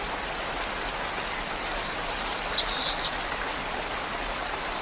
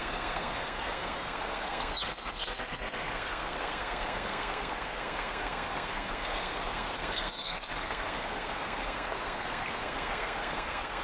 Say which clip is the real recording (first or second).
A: first